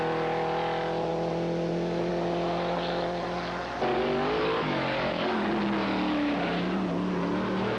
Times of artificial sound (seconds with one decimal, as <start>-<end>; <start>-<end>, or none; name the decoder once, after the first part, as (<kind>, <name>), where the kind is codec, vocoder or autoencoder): 3.9-5.5 (codec, DAC)